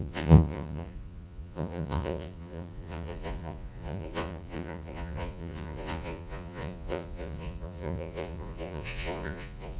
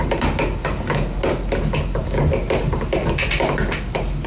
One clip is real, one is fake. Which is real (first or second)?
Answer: second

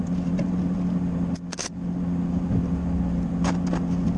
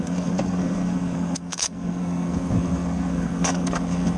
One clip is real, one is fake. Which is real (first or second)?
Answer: first